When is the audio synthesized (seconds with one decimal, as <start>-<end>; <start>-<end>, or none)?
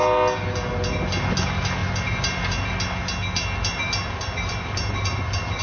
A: none